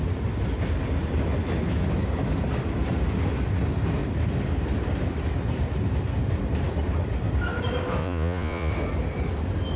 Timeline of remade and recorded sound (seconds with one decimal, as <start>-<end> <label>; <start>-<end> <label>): 0.0-8.0 recorded; 8.0-8.7 remade; 8.7-9.8 recorded